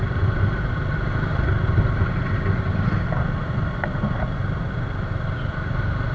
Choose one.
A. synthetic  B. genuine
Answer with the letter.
B